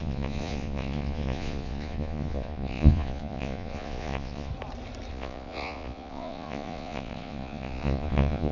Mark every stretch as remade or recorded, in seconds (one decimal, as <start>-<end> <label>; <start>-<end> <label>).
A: 0.0-4.5 remade; 4.5-5.1 recorded; 5.1-8.5 remade